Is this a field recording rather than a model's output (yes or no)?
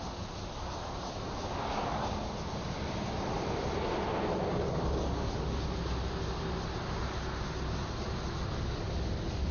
yes